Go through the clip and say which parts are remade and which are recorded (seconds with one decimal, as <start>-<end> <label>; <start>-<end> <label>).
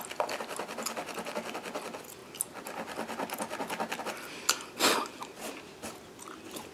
0.0-6.7 recorded